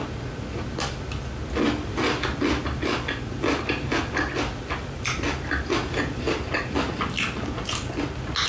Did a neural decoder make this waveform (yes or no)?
no